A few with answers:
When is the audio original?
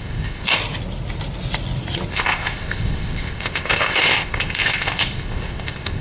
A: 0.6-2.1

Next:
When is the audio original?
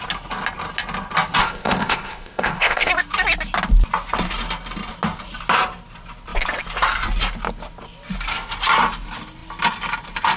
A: 0.0-1.4; 2.9-10.4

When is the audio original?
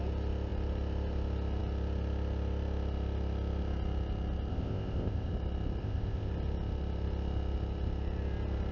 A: 0.0-4.5; 5.3-5.8; 6.3-8.7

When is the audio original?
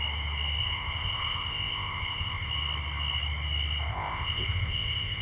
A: 0.0-0.6; 2.5-3.9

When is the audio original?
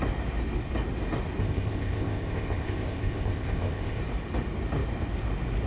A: 0.0-1.4; 4.0-5.7